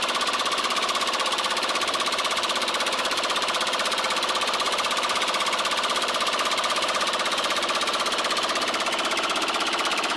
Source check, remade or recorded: remade